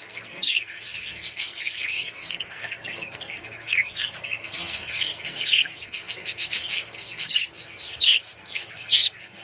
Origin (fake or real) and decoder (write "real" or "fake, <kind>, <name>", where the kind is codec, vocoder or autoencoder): fake, codec, SNAC